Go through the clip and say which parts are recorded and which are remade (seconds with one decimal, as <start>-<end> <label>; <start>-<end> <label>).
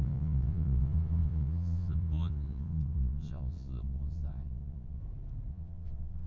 0.0-5.0 remade; 5.0-5.5 recorded; 5.5-6.3 remade